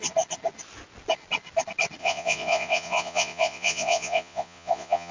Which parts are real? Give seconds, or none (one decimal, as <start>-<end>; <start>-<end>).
0.0-2.0